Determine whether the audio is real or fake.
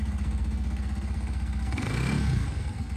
fake